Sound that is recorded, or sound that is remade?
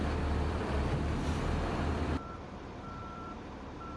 remade